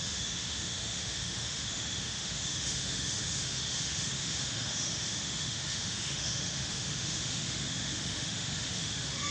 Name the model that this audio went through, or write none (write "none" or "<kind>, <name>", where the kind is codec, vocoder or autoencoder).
autoencoder, DAC-VAE